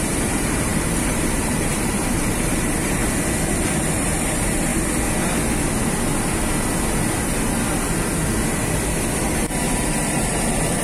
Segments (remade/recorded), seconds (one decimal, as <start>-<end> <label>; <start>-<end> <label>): 0.0-3.0 remade; 3.0-3.9 recorded; 3.9-4.7 remade; 4.7-9.1 recorded; 9.1-10.8 remade